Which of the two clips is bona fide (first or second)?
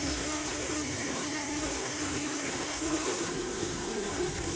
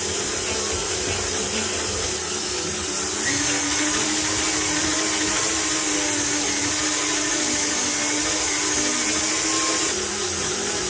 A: second